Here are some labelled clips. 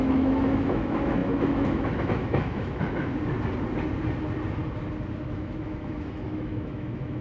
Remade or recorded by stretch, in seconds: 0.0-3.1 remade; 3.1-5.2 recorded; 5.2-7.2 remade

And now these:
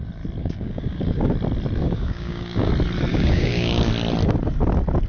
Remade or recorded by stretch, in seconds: 0.0-0.4 recorded; 0.4-1.3 remade; 1.3-1.8 recorded; 1.8-2.7 remade; 2.7-3.1 recorded; 3.1-3.9 remade; 3.9-5.1 recorded

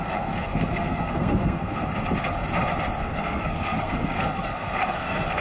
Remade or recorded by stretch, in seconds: 0.0-1.9 remade; 1.9-3.0 recorded; 3.0-5.4 remade

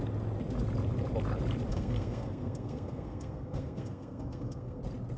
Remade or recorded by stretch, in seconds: 0.0-1.7 recorded; 1.7-4.8 remade; 4.8-5.2 recorded

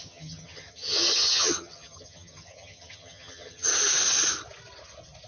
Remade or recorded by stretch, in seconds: 0.0-3.7 remade; 3.7-5.3 recorded